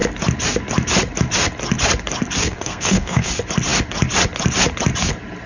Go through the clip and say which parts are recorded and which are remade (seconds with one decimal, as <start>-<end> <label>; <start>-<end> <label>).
0.0-2.4 recorded; 2.4-3.3 remade; 3.3-5.5 recorded